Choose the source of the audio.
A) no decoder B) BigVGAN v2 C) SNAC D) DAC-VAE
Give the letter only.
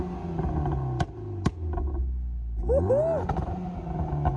A